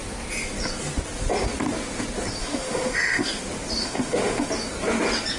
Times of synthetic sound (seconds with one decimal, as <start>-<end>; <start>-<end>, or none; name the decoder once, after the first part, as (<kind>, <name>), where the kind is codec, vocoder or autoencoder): 2.4-3.4 (autoencoder, DAC-VAE); 3.8-4.5